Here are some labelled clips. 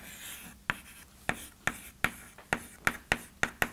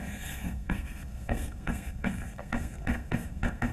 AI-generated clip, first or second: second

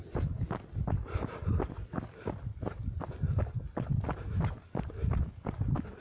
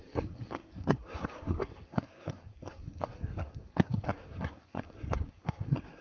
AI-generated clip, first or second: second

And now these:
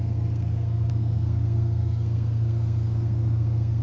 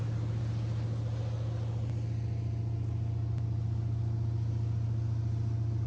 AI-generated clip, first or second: first